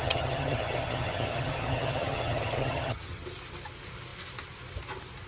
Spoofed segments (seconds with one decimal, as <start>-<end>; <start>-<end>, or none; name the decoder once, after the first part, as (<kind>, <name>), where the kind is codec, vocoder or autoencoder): 0.0-3.2 (vocoder, HiFi-GAN)